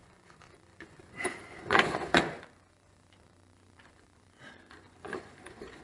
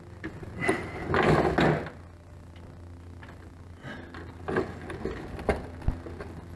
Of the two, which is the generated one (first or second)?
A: first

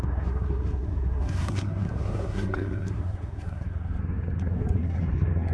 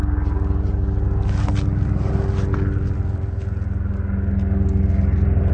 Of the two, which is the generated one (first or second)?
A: first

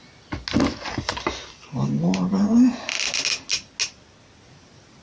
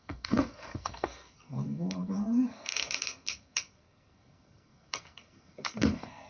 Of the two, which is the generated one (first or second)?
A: second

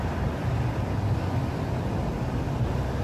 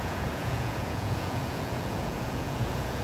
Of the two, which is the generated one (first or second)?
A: second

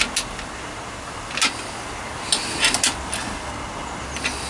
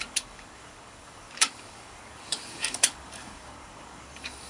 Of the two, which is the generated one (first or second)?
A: second